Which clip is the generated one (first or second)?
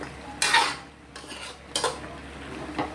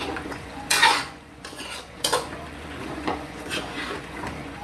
second